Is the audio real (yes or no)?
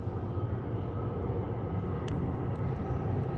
yes